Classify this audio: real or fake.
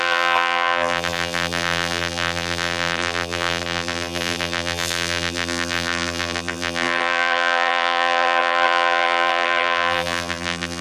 fake